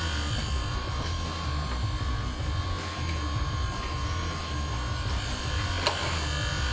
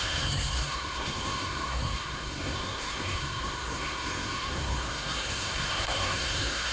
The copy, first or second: second